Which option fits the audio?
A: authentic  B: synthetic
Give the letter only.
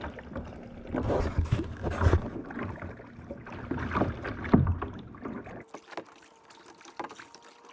A